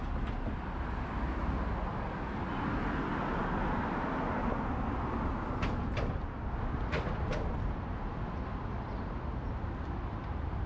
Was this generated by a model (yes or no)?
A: no